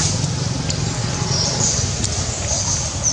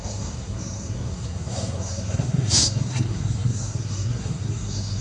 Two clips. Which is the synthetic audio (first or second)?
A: second